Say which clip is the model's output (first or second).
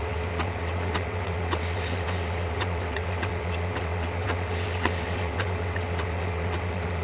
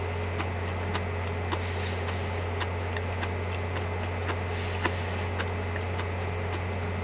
first